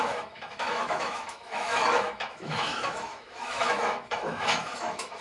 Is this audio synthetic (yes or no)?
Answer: yes